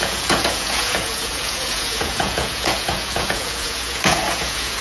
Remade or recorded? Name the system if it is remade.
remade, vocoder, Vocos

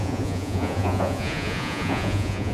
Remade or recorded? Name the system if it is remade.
remade, vocoder, Vocos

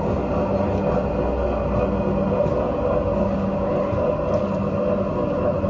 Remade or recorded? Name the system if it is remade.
recorded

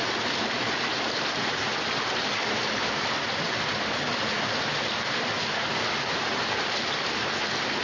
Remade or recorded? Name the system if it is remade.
recorded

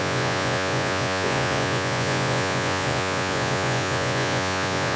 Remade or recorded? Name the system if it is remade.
remade, vocoder, Vocos